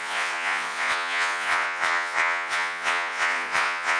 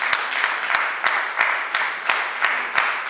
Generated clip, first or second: first